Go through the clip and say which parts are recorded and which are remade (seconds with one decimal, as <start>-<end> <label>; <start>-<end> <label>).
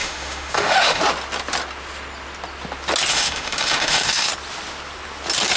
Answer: 0.0-1.0 remade; 1.0-3.1 recorded; 3.1-4.3 remade; 4.3-5.6 recorded